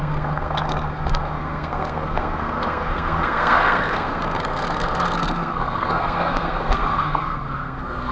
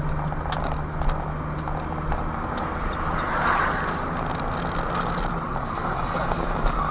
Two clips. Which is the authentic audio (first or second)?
second